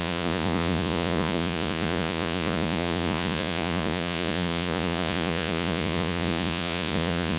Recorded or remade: remade